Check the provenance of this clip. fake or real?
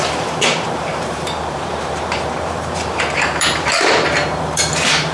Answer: fake